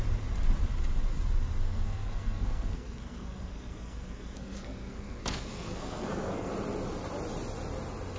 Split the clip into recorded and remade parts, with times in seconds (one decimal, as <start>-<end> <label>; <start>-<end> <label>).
0.0-1.6 recorded; 1.6-6.5 remade; 6.5-8.2 recorded